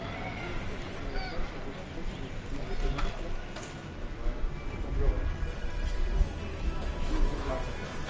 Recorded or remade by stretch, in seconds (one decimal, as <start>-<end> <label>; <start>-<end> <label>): 0.0-6.5 recorded; 6.5-7.5 remade; 7.5-8.1 recorded